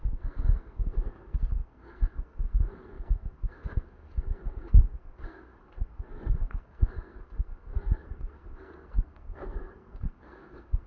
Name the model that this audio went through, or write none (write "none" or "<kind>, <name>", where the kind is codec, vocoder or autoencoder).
codec, SNAC